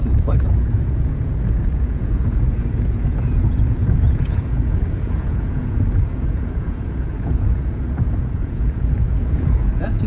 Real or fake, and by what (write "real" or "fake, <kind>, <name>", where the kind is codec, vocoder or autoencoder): fake, vocoder, Vocos